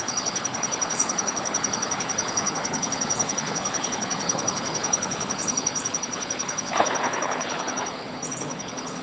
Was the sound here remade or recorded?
remade